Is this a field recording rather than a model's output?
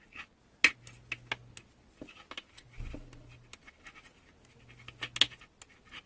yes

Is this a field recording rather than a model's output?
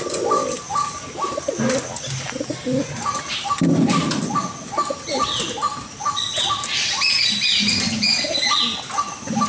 yes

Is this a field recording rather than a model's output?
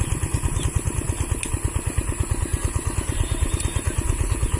yes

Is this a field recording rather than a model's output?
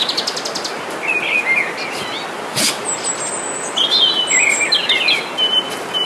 yes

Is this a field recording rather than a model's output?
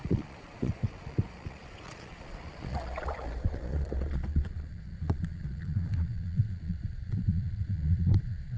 no